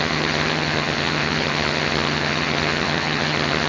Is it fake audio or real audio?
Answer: fake